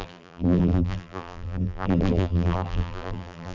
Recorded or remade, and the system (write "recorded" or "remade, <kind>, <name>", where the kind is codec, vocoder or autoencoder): remade, vocoder, BigVGAN v2